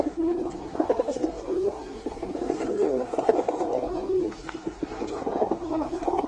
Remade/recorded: remade